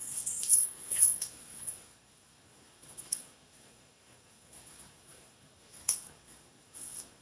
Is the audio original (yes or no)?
no